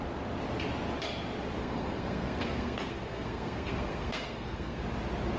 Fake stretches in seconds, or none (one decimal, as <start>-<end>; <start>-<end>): 1.6-4.8